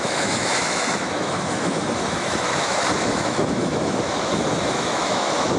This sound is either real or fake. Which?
fake